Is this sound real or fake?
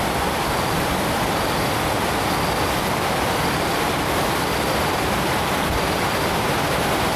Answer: real